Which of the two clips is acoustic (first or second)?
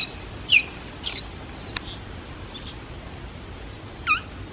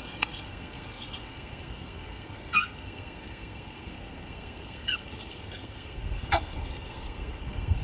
first